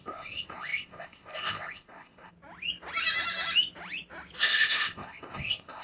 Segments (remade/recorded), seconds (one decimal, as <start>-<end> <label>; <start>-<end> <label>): 0.0-2.3 remade; 2.3-4.4 recorded; 4.4-5.8 remade